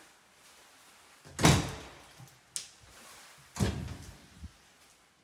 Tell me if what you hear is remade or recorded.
recorded